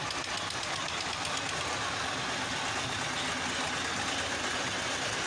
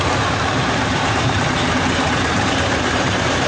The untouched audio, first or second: first